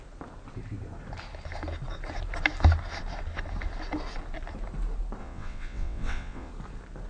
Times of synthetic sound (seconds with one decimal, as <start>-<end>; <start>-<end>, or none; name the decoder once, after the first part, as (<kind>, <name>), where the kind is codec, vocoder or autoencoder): 5.2-6.5 (vocoder, WaveNeXt)